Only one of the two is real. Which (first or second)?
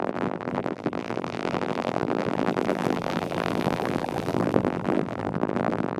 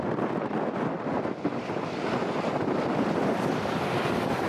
second